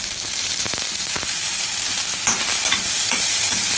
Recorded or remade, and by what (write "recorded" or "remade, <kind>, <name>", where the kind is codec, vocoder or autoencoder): remade, vocoder, BigVGAN v2